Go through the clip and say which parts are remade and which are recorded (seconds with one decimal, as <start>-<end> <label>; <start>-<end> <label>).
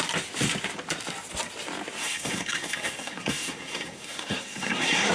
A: 0.0-2.0 recorded; 2.0-5.1 remade